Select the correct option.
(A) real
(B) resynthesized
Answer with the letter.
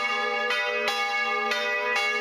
A